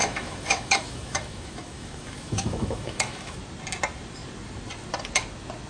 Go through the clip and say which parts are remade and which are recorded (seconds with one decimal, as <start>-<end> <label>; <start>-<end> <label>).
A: 0.0-3.4 remade; 3.4-5.7 recorded